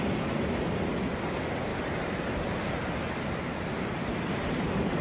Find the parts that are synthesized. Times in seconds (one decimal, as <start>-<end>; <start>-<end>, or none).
1.7-5.0